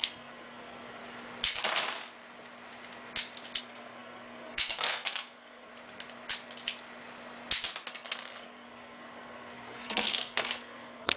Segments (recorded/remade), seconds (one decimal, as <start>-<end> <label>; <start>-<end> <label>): 0.0-1.0 remade; 1.0-3.6 recorded; 3.6-5.7 remade; 5.7-7.9 recorded; 7.9-11.2 remade